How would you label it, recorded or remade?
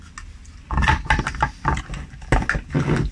recorded